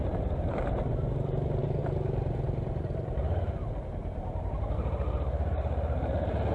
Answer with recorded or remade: recorded